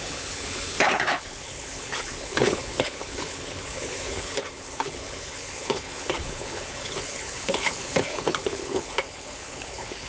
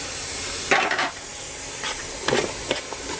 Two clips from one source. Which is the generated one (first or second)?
first